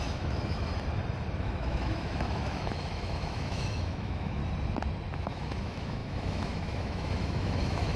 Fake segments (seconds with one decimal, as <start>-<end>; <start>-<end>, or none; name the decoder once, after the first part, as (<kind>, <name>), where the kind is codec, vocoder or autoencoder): 0.0-0.7 (autoencoder, DAC-VAE); 1.4-4.4; 5.1-8.0